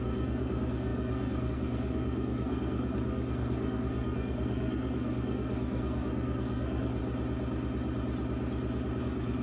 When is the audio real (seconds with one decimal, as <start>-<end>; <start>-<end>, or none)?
7.0-9.0